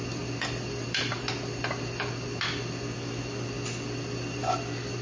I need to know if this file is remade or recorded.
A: recorded